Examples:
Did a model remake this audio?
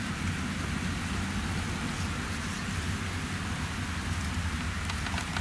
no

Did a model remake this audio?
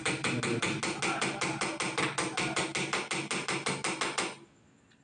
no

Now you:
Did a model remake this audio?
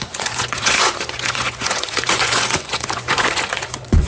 yes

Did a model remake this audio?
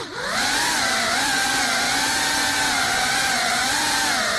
yes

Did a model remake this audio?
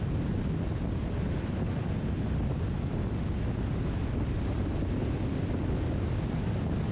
no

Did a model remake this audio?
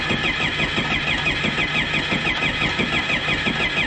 no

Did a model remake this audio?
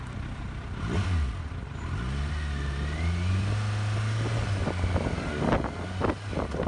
no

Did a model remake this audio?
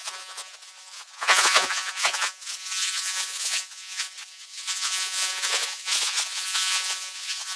yes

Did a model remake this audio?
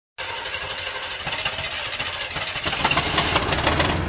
no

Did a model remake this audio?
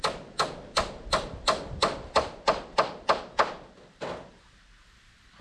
no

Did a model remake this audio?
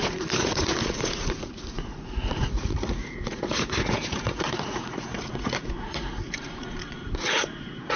yes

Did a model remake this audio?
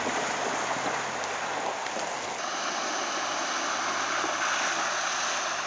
no